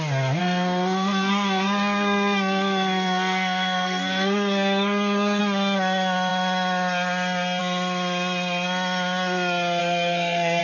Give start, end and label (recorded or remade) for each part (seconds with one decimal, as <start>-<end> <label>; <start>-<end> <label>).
0.0-0.4 recorded; 0.4-5.4 remade; 5.4-9.8 recorded; 9.8-10.6 remade